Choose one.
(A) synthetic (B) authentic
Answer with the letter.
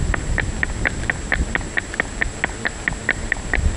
B